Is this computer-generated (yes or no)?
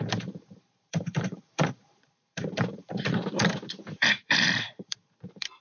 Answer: yes